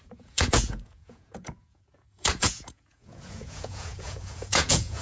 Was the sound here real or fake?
fake